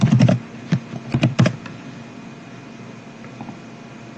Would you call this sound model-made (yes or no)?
no